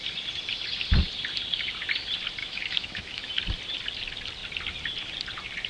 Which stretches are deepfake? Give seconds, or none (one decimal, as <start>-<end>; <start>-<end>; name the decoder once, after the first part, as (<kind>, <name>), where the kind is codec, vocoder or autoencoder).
2.4-3.3 (autoencoder, DAC-VAE)